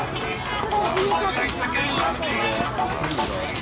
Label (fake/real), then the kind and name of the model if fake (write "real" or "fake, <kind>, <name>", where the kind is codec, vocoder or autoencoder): real